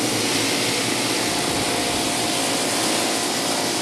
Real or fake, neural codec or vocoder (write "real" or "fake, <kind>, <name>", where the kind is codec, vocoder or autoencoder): real